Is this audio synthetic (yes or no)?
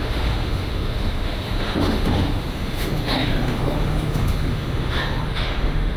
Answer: yes